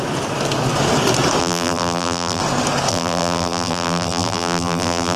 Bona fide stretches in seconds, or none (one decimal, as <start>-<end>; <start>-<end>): 0.0-1.4; 2.4-2.9